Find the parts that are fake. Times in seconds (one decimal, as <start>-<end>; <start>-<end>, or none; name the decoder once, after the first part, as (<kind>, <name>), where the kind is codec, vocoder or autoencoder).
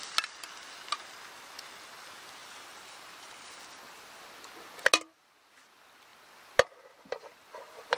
2.4-3.6 (vocoder, BigVGAN v2)